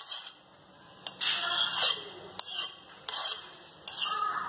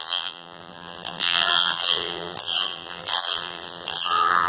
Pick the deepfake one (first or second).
second